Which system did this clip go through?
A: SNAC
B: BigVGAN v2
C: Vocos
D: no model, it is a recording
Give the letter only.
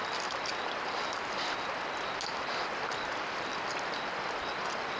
D